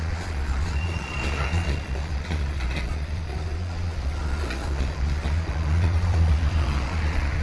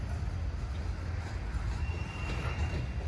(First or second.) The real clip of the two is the second